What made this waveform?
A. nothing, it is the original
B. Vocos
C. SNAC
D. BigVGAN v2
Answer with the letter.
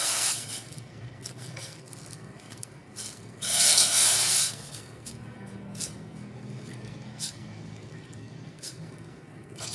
C